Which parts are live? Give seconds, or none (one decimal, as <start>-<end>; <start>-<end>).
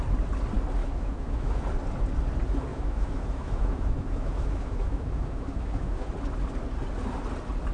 0.0-0.8; 1.6-2.7; 6.1-7.7